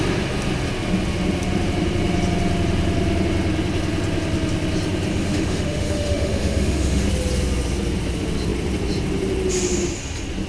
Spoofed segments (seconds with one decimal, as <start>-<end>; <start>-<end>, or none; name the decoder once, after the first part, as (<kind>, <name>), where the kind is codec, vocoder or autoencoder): 5.1-7.1 (autoencoder, DAC-VAE)

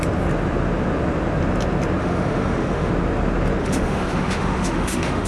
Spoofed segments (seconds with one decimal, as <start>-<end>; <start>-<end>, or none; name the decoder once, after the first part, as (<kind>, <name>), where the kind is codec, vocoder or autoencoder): 2.0-2.9 (autoencoder, DAC-VAE); 3.6-5.3

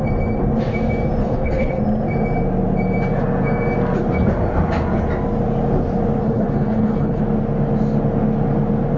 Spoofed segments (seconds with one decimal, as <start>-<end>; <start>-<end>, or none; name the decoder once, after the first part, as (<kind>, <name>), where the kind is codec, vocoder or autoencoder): 1.2-1.8 (codec, HILCodec); 6.2-7.2

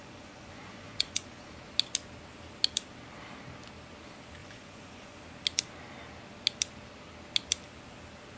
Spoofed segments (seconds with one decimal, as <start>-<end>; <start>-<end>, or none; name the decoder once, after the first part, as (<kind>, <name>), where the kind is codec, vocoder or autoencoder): 0.0-1.5 (vocoder, Vocos); 4.4-5.2

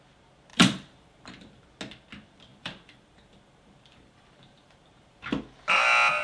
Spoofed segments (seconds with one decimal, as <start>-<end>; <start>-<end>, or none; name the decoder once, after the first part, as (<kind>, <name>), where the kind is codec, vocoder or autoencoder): 0.5-1.6 (vocoder, BigVGAN v2); 2.5-5.4

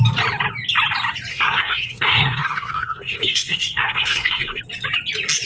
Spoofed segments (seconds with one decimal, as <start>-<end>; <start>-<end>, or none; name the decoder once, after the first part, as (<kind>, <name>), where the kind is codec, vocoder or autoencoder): 1.3-4.6 (codec, SNAC)